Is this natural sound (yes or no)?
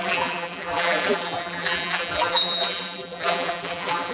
no